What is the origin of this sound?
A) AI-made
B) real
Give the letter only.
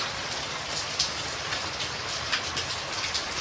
A